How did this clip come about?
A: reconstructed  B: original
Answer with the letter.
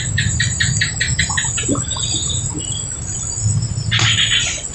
B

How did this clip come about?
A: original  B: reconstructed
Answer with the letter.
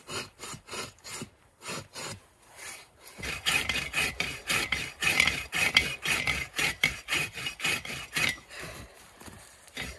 B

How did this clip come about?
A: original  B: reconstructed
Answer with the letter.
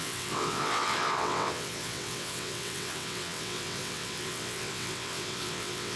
B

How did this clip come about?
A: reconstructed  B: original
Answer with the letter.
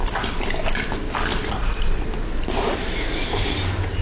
B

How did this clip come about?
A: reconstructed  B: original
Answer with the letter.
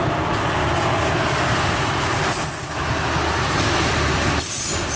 B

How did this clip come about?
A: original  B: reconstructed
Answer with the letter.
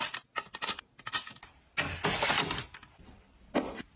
A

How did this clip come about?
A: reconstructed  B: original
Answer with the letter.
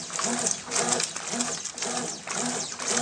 B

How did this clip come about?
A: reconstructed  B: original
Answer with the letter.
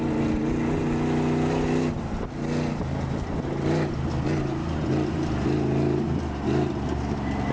B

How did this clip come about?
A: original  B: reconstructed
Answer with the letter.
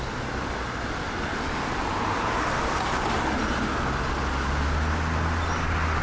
A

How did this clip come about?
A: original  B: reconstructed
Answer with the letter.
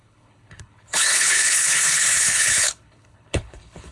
B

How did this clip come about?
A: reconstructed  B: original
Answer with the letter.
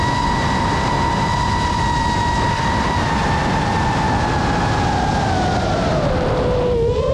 B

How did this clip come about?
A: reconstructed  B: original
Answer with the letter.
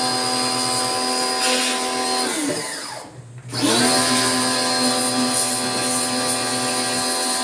B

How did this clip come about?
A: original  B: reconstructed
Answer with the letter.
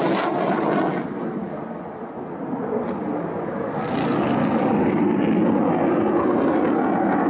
A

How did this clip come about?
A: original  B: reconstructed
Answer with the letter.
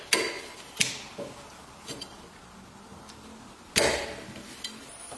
A